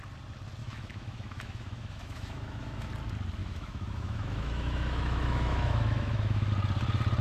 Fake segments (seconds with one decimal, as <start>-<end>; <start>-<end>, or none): 0.6-2.9; 3.4-6.5